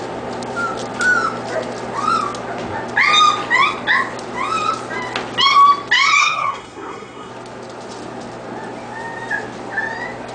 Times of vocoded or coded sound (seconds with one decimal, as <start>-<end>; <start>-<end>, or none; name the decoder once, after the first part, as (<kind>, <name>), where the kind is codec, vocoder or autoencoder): 6.2-7.3 (codec, SNAC)